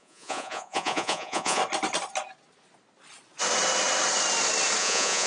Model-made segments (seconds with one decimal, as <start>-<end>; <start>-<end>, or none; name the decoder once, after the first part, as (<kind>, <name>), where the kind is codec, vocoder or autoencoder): 0.0-1.6 (vocoder, Vocos); 4.8-5.3